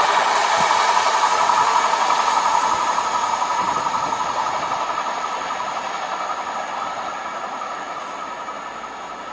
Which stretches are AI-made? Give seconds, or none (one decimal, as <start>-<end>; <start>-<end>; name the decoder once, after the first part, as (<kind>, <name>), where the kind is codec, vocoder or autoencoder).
0.4-4.6 (vocoder, Vocos); 7.3-8.1